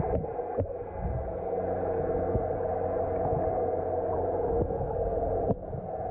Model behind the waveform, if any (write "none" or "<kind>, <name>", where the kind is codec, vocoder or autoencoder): none